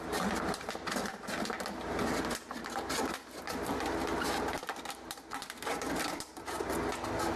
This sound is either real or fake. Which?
real